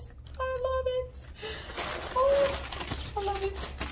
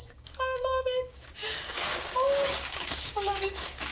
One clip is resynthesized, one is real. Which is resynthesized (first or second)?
second